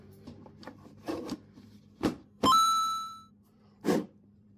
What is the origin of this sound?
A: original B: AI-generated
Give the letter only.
B